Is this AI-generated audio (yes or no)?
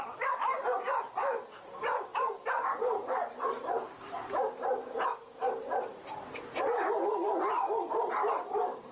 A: yes